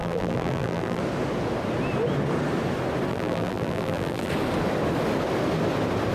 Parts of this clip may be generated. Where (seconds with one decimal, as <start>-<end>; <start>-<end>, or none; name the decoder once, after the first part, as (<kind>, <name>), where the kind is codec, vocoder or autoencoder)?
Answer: 0.0-1.0 (vocoder, BigVGAN v2); 3.1-4.3